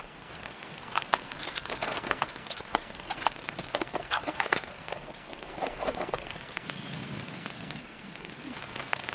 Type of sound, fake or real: fake